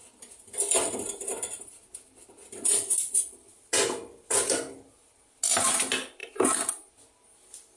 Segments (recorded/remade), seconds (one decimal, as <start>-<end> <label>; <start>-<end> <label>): 0.0-7.8 recorded